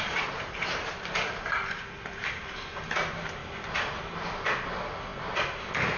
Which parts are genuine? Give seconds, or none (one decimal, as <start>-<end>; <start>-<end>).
3.4-4.0; 5.1-6.0